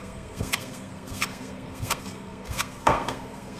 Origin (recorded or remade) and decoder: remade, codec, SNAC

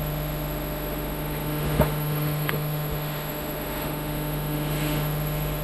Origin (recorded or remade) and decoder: remade, autoencoder, DAC-VAE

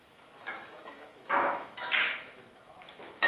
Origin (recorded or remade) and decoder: remade, autoencoder, DAC-VAE